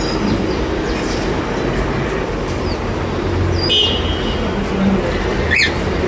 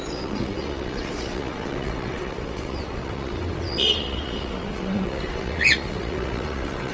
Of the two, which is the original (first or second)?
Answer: first